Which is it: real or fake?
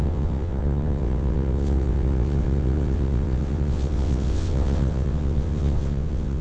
fake